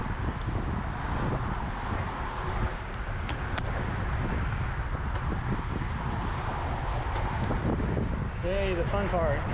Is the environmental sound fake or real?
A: real